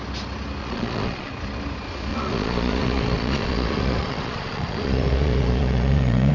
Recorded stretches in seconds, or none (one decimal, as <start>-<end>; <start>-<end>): 0.0-0.6; 1.3-2.1